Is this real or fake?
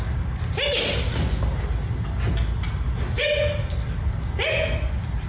real